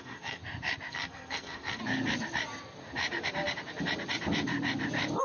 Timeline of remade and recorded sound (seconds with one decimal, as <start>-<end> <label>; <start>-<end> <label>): 0.0-0.4 remade; 0.4-0.9 recorded; 0.9-1.8 remade; 1.8-5.2 recorded